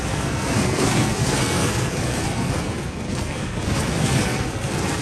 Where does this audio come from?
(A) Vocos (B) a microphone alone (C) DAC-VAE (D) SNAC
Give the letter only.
D